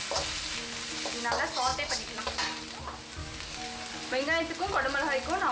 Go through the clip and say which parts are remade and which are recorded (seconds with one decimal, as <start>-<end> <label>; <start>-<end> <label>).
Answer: 0.0-3.2 recorded; 3.2-4.0 remade; 4.0-5.5 recorded